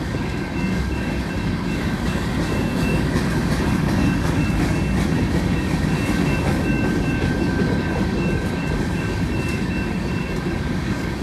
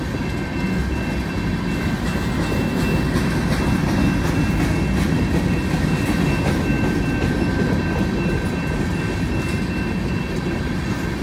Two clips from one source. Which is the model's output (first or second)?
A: first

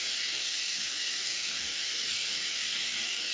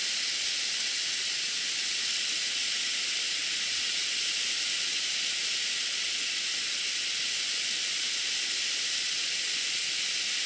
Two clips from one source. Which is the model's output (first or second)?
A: first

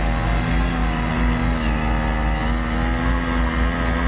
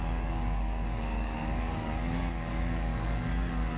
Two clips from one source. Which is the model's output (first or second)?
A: second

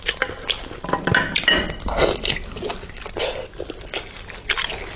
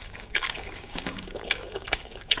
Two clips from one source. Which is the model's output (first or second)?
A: second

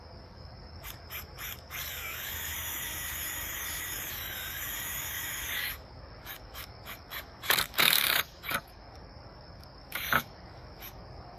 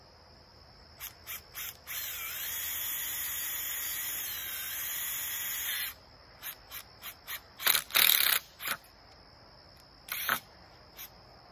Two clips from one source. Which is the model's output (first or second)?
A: first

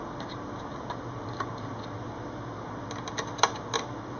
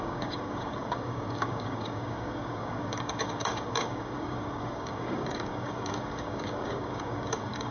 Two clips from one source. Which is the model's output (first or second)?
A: second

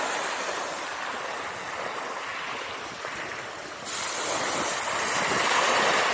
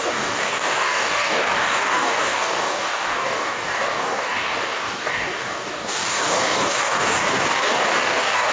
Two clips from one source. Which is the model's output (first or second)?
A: second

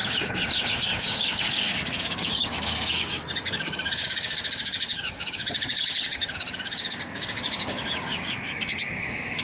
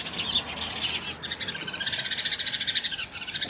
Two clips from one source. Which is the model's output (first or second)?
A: first